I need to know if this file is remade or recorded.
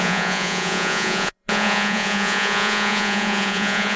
remade